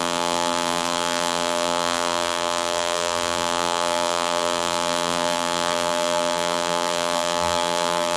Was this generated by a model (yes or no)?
yes